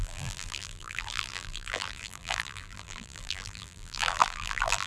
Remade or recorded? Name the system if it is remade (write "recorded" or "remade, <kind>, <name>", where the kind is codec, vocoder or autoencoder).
remade, vocoder, BigVGAN v2